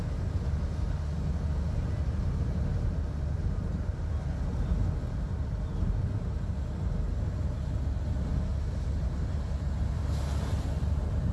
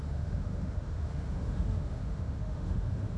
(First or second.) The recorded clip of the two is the first